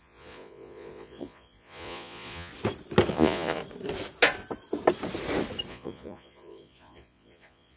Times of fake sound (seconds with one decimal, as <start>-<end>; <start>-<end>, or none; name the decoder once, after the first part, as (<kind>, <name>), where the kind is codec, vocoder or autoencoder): 0.0-2.5 (vocoder, Vocos); 3.1-3.6; 5.7-7.8